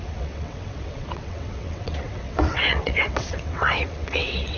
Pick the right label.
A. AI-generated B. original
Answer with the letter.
A